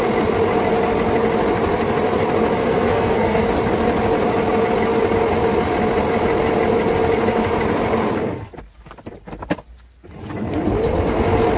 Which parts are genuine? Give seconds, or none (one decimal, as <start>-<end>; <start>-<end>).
0.0-2.6; 3.5-11.6